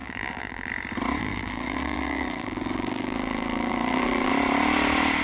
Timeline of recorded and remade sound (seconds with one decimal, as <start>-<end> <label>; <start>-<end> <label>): 0.0-0.7 remade; 0.7-1.2 recorded; 1.2-4.3 remade; 4.3-5.2 recorded